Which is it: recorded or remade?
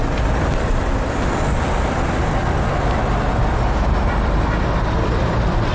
remade